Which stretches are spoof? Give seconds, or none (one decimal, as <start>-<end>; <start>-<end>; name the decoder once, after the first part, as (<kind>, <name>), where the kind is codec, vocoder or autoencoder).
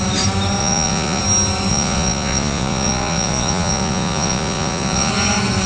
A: 0.6-1.2 (vocoder, Vocos); 1.7-5.1